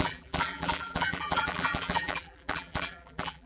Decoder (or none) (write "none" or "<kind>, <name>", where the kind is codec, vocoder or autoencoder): vocoder, BigVGAN v2